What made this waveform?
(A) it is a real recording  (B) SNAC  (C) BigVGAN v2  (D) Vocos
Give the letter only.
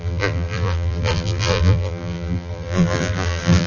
C